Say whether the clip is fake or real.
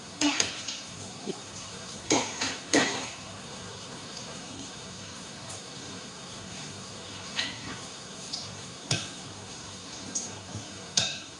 fake